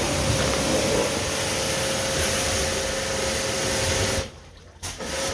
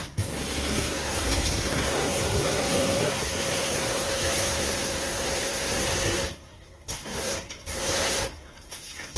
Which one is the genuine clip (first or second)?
first